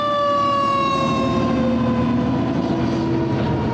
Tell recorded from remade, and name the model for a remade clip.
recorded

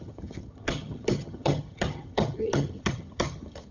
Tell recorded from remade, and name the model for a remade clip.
remade, vocoder, HiFi-GAN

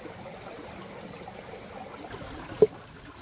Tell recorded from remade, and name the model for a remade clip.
recorded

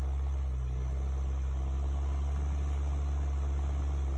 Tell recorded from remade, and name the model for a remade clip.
recorded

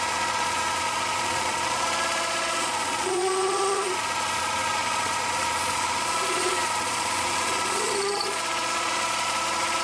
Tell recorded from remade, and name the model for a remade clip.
remade, vocoder, Vocos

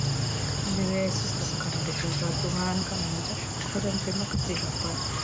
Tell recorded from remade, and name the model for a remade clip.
recorded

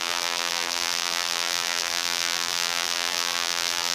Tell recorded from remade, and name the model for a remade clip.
remade, vocoder, BigVGAN v2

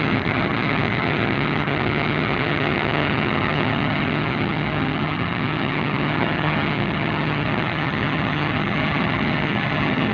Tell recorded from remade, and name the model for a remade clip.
remade, vocoder, HiFi-GAN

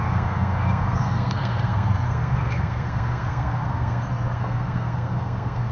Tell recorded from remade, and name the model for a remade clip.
remade, codec, SNAC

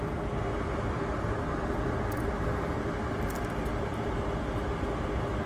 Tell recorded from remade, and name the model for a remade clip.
recorded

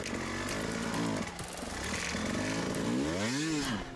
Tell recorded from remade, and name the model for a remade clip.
recorded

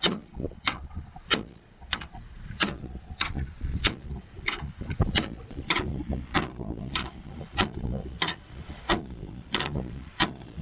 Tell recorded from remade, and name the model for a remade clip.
remade, vocoder, Vocos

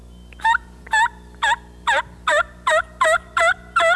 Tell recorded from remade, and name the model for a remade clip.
recorded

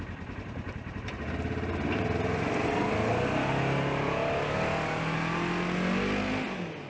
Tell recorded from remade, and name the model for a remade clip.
recorded